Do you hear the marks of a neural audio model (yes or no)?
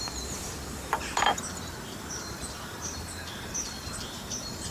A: yes